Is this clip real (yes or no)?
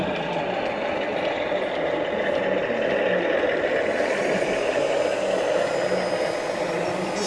yes